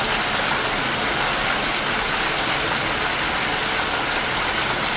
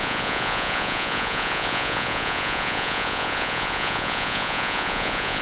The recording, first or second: first